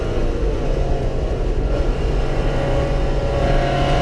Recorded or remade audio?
remade